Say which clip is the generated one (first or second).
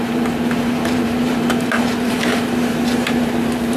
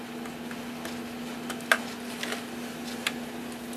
first